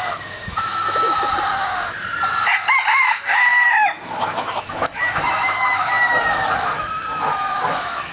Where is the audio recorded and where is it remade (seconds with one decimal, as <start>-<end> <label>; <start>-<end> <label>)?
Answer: 0.0-1.3 remade; 1.3-3.0 recorded; 3.0-8.1 remade